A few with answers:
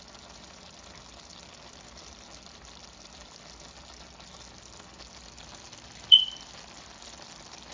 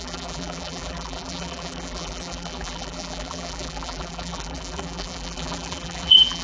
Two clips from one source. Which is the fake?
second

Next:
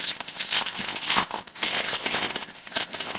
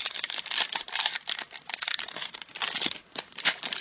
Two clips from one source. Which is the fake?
first